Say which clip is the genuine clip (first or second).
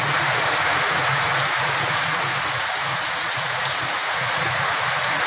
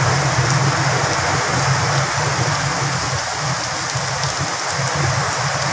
second